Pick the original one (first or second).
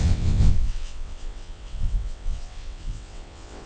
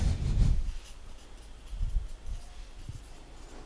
second